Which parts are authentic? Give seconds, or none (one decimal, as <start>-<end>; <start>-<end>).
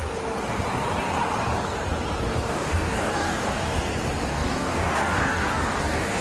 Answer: 0.0-2.3; 3.7-4.3